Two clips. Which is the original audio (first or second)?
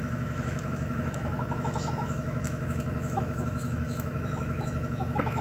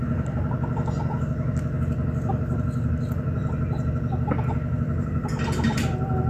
second